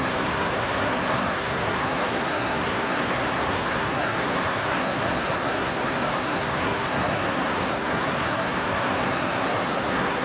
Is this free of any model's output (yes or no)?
no